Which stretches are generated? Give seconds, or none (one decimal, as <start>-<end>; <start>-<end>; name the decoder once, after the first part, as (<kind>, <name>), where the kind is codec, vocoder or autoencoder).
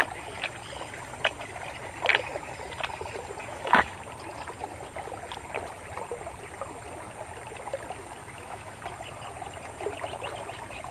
3.4-4.0 (autoencoder, DAC-VAE); 8.2-8.8